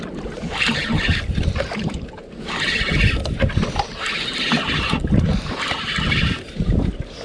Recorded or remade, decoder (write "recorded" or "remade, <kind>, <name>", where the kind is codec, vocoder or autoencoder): recorded